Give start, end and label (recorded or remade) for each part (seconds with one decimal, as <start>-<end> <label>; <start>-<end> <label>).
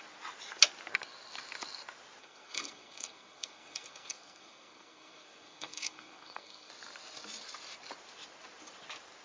0.0-2.2 recorded; 2.2-6.7 remade; 6.7-9.2 recorded